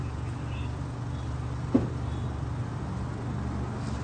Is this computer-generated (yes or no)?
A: no